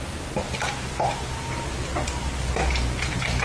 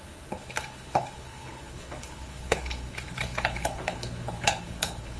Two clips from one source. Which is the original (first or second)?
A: first